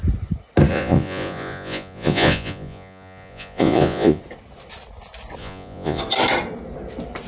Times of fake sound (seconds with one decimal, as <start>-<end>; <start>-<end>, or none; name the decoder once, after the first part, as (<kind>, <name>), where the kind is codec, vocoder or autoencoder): 0.7-4.2 (vocoder, Vocos); 5.4-6.0